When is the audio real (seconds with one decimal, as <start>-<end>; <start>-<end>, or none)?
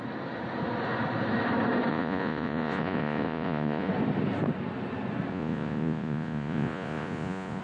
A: 0.0-1.9; 3.9-5.3